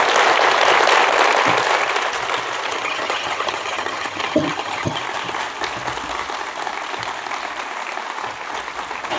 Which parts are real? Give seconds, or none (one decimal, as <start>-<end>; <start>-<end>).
0.0-2.7; 5.0-9.2